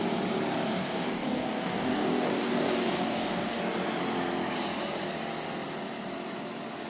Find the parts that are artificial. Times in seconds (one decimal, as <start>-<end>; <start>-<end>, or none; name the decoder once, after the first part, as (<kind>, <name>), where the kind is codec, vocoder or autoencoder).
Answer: 0.8-3.6 (codec, DAC)